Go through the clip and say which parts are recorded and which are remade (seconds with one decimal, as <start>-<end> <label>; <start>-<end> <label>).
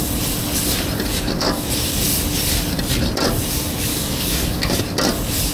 0.0-1.1 recorded; 1.1-1.7 remade; 1.7-3.9 recorded; 3.9-4.8 remade; 4.8-5.5 recorded